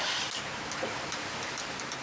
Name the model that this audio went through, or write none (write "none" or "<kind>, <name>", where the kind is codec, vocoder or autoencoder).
none